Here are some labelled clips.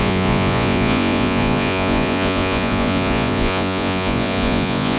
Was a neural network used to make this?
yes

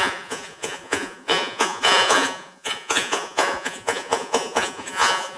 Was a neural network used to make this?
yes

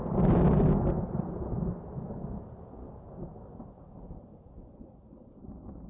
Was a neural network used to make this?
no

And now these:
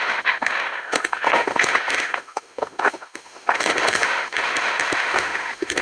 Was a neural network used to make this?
yes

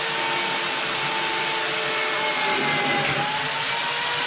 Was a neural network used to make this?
no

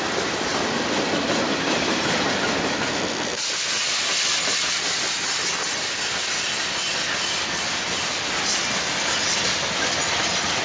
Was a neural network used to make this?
no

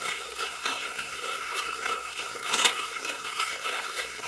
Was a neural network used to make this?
yes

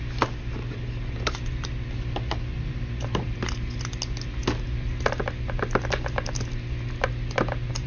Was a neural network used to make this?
no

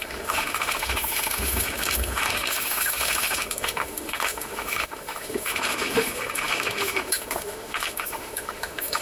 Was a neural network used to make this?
yes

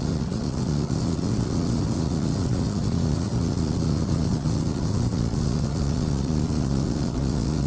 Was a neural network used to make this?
yes